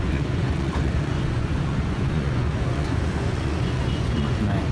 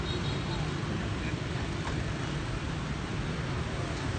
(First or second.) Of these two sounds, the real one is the second